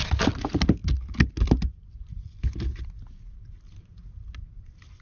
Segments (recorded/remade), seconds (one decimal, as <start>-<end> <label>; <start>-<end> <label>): 0.0-5.0 recorded